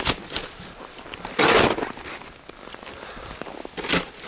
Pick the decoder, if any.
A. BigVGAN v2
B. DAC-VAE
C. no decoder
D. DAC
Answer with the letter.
C